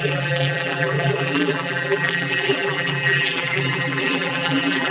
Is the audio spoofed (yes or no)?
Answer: yes